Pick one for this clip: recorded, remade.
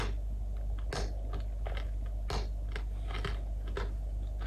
recorded